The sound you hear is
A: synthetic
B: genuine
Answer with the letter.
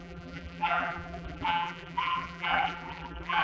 A